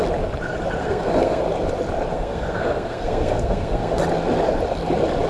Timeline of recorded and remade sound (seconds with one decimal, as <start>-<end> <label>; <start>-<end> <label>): 0.0-0.8 recorded; 0.8-1.4 remade; 1.4-2.1 recorded; 2.1-4.0 remade; 4.0-5.3 recorded